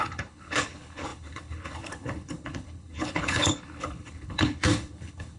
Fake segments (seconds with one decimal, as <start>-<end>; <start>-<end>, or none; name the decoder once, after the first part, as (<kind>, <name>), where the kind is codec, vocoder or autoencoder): 0.0-5.4 (codec, HILCodec)